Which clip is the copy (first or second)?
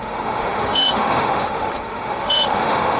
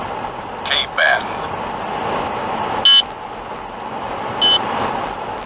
first